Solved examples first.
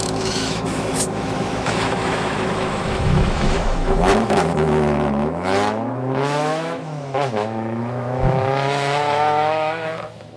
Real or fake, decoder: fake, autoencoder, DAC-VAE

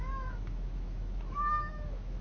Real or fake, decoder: fake, autoencoder, DAC-VAE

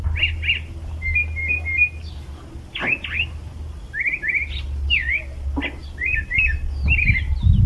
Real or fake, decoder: real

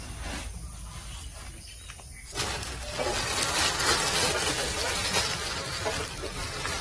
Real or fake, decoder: real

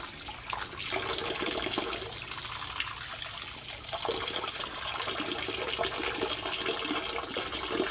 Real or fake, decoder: real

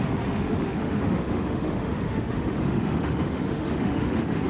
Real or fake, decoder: fake, autoencoder, DAC-VAE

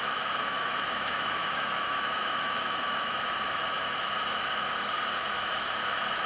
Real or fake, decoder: fake, autoencoder, DAC-VAE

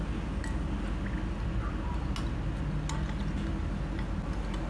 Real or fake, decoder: real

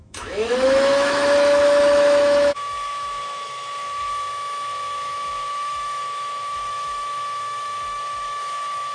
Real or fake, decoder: fake, autoencoder, DAC-VAE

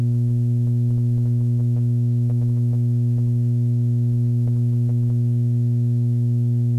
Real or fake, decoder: fake, autoencoder, DAC-VAE